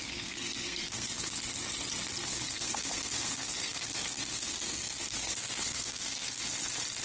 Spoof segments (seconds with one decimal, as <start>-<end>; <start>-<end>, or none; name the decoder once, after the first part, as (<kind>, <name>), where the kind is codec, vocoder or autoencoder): 0.0-1.4 (codec, SNAC); 2.3-6.4